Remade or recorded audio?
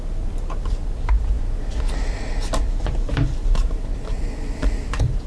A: recorded